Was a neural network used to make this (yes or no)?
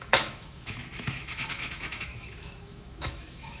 yes